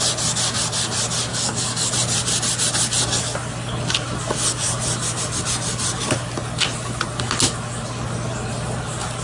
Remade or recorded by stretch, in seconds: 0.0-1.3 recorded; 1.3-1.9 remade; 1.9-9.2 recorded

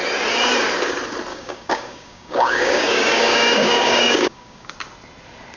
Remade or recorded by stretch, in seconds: 0.0-1.3 recorded; 1.3-4.7 remade; 4.7-5.6 recorded